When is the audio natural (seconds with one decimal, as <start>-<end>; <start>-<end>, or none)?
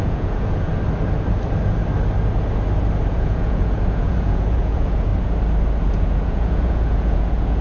0.7-3.1; 5.1-5.8